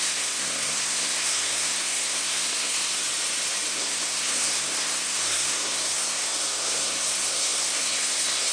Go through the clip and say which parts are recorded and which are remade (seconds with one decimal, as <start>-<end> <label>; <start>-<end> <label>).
0.0-3.0 remade; 3.0-3.7 recorded; 3.7-8.5 remade